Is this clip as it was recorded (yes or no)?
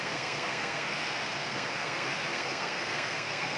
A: no